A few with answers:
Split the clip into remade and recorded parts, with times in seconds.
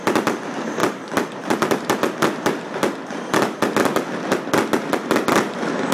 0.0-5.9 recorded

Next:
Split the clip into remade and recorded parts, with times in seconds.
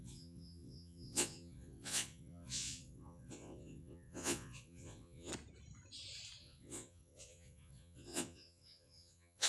0.0-5.3 remade; 5.3-6.4 recorded; 6.4-9.5 remade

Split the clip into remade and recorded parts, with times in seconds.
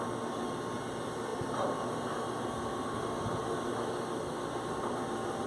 0.0-5.5 recorded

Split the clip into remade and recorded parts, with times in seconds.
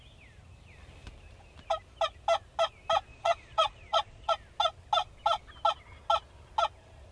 0.0-3.1 recorded; 3.1-4.3 remade; 4.3-7.1 recorded